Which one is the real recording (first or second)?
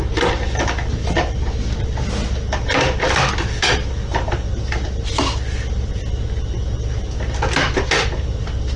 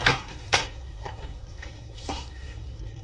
first